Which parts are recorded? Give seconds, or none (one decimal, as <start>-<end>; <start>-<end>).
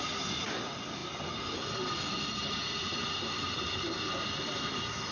0.0-5.1